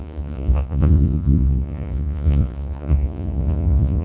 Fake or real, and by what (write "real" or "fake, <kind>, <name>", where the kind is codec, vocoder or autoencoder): fake, vocoder, Vocos